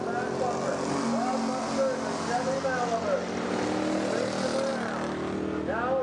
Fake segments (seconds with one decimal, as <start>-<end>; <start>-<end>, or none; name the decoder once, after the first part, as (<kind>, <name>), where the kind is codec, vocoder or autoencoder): none